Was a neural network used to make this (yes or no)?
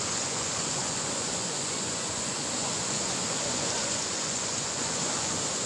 yes